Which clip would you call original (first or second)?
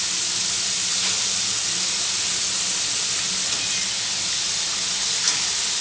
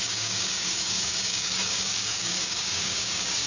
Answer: first